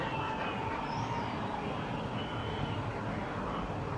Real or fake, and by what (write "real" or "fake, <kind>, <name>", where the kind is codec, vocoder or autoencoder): real